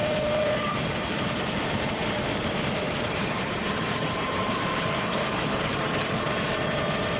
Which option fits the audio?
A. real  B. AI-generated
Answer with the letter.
B